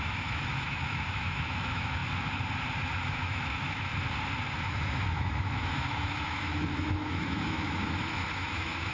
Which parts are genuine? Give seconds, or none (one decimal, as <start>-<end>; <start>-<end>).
2.0-3.0; 3.9-4.7